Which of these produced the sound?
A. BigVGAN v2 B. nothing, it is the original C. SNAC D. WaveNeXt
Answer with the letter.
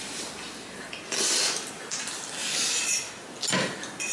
B